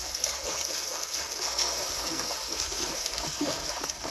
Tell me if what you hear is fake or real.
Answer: fake